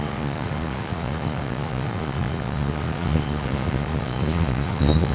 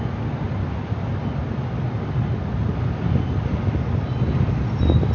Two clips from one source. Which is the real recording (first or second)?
second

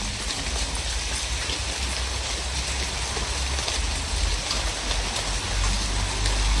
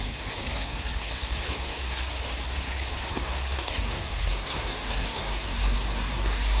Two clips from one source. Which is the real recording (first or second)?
first